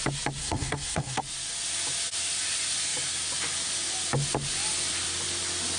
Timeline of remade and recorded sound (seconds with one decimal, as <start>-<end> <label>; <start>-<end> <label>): 0.0-0.4 recorded; 0.4-1.2 remade; 1.2-5.8 recorded